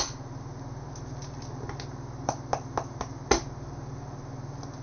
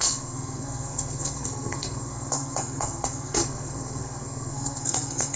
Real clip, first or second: first